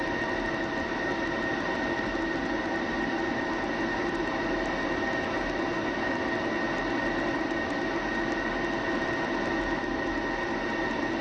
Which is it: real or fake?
real